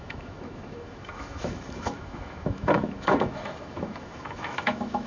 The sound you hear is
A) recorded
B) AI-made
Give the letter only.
B